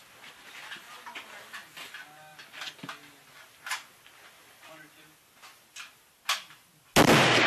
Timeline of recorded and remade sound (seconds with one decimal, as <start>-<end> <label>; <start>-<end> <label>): 0.0-7.5 recorded